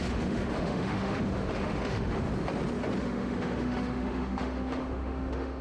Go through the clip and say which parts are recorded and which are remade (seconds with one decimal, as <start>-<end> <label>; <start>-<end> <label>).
0.0-2.3 remade; 2.3-3.0 recorded; 3.0-5.6 remade